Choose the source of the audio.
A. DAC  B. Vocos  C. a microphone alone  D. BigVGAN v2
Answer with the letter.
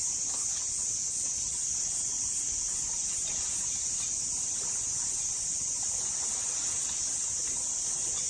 C